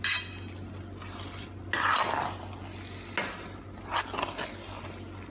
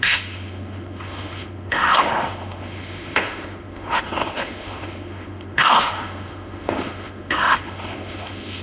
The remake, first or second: second